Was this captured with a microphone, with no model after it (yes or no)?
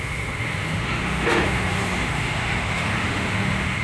no